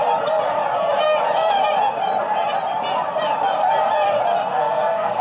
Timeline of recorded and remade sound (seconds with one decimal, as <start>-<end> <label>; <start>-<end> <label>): 0.0-4.5 recorded; 4.5-5.2 remade

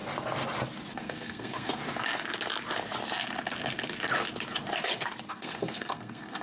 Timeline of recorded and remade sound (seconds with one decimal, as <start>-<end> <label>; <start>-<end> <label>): 0.0-0.9 recorded; 0.9-1.8 remade; 1.8-5.3 recorded; 5.3-6.4 remade

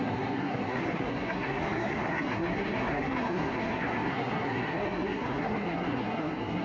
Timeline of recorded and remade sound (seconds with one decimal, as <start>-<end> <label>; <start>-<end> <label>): 0.0-6.6 remade

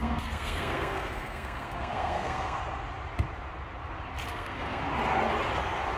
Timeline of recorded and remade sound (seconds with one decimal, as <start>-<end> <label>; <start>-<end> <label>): 0.0-2.6 remade; 2.6-4.3 recorded; 4.3-4.8 remade; 4.8-6.0 recorded

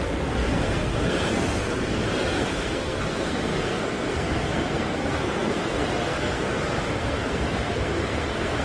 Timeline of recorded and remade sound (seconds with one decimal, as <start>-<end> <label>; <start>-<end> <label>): 0.0-8.6 remade